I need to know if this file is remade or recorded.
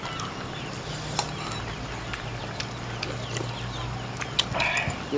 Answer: recorded